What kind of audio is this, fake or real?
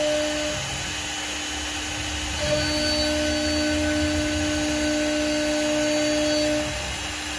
real